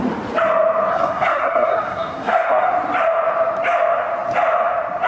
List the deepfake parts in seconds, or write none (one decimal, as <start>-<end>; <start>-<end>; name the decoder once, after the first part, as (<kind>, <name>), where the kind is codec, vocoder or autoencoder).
0.9-2.6 (codec, SNAC)